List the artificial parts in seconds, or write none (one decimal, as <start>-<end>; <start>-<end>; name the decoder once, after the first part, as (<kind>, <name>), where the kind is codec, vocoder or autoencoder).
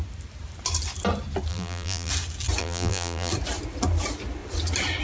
1.5-2.1 (vocoder, BigVGAN v2); 2.6-3.3